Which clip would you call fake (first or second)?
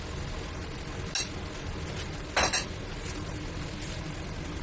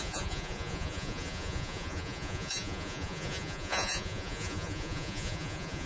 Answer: second